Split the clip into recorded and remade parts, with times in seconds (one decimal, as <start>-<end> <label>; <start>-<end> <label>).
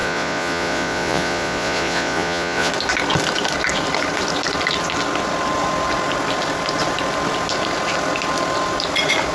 0.0-2.7 remade; 2.7-9.3 recorded